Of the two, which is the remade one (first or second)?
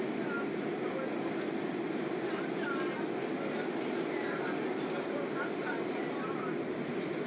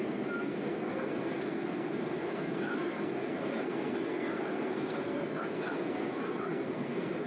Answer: second